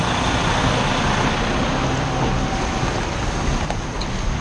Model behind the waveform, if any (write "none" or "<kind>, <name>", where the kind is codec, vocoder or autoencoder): none